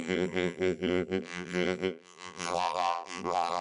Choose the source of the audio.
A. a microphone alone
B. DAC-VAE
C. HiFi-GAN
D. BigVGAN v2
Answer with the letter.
D